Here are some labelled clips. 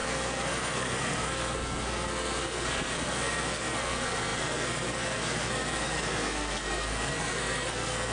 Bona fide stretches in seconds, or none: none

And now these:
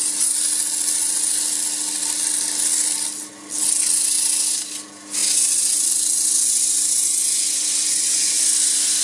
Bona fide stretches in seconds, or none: 0.0-7.1; 8.4-9.0

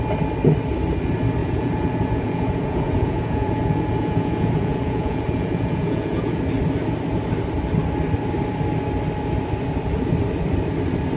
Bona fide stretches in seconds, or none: 0.0-1.4; 6.4-11.2

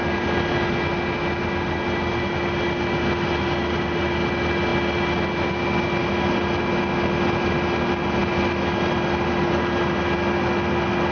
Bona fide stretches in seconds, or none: 0.0-11.1

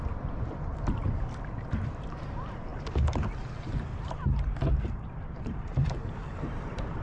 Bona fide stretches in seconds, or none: none

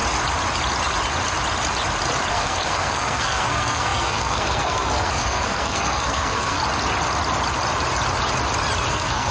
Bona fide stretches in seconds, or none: 0.0-2.3; 6.6-8.9